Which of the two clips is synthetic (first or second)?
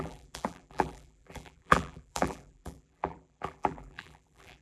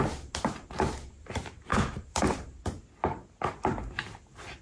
first